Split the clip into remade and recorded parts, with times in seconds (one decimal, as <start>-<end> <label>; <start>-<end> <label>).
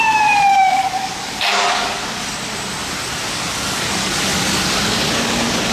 0.0-2.0 remade; 2.0-3.3 recorded; 3.3-5.7 remade